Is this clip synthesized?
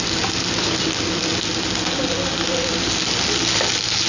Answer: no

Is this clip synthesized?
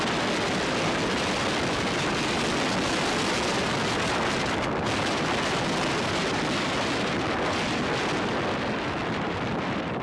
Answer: no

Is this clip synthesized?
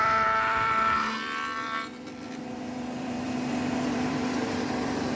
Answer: yes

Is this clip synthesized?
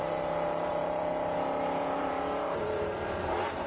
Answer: yes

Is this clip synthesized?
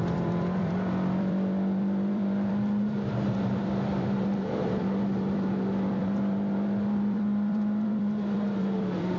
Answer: yes